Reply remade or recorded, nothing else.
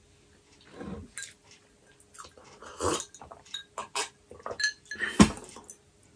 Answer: recorded